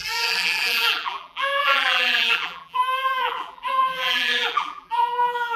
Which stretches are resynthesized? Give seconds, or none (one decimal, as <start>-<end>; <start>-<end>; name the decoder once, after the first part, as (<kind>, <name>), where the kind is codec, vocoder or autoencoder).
0.0-5.6 (vocoder, BigVGAN v2)